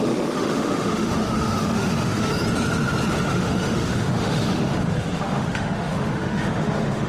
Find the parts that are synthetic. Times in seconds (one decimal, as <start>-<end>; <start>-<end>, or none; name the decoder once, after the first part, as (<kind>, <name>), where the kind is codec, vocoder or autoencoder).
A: 0.0-2.3 (autoencoder, DAC-VAE); 3.3-7.1